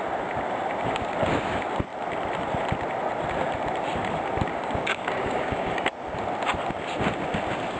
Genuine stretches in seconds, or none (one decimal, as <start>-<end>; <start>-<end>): 0.0-4.5; 5.7-7.8